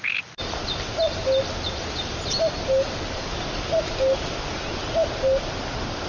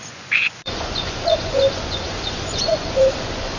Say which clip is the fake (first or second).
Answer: second